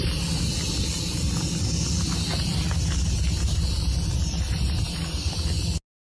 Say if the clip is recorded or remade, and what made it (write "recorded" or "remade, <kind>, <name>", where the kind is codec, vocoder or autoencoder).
recorded